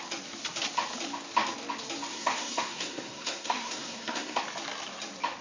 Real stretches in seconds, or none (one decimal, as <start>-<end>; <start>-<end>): 0.0-2.1; 4.4-5.4